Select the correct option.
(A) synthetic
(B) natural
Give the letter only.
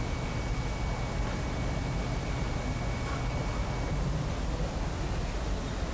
B